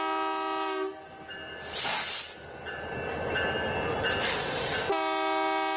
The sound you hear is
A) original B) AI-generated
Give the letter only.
A